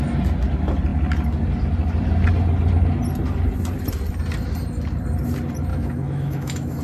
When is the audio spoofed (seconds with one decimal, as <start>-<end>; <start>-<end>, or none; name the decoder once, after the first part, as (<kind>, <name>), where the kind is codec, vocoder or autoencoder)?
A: 5.7-6.8 (autoencoder, DAC-VAE)